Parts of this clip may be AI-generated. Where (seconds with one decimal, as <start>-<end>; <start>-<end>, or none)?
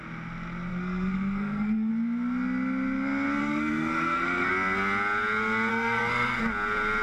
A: 0.7-1.9; 3.4-4.5; 5.7-6.4